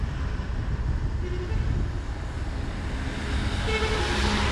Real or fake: real